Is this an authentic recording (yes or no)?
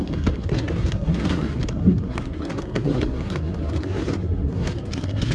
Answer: no